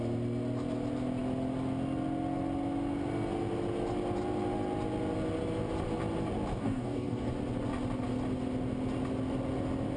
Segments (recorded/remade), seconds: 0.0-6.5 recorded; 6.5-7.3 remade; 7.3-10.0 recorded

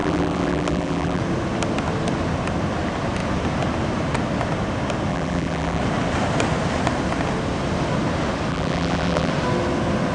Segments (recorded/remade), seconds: 0.0-1.2 remade; 1.2-5.1 recorded; 5.1-5.8 remade; 5.8-8.5 recorded; 8.5-9.3 remade; 9.3-10.1 recorded

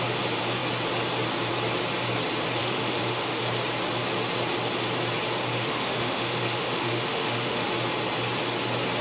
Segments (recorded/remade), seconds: 0.0-2.6 recorded; 2.6-3.4 remade; 3.4-5.5 recorded; 5.5-7.7 remade; 7.7-9.0 recorded